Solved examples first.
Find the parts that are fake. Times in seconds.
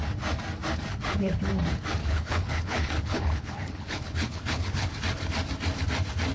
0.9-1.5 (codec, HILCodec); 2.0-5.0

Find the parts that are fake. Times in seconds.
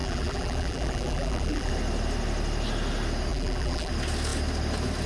0.0-1.7 (vocoder, BigVGAN v2); 3.3-3.9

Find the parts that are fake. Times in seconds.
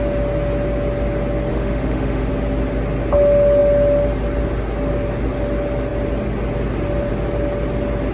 1.5-2.3 (autoencoder, DAC-VAE)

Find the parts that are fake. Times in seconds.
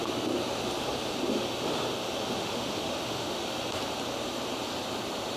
2.4-3.4 (autoencoder, DAC-VAE)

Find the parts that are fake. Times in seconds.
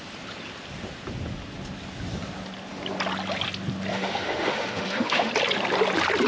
3.9-5.3 (autoencoder, DAC-VAE)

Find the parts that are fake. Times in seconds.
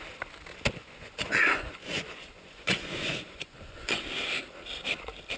0.8-4.0 (vocoder, Vocos)